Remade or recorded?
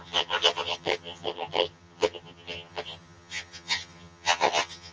remade